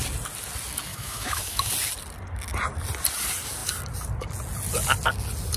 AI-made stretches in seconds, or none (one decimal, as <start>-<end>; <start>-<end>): 0.9-1.7